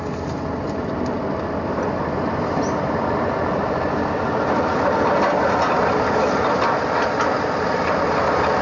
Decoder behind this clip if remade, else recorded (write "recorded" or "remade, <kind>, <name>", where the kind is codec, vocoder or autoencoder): recorded